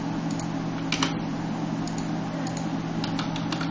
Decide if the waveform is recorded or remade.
recorded